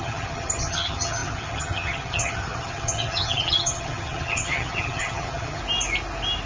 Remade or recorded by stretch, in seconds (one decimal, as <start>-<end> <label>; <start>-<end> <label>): 0.0-5.6 remade; 5.6-6.5 recorded